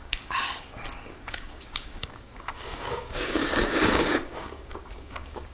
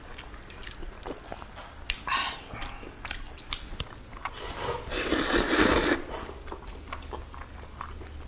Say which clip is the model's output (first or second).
first